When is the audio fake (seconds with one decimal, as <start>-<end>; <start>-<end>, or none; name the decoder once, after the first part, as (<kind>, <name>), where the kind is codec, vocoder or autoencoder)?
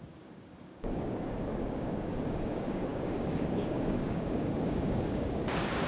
0.0-5.9 (codec, DAC)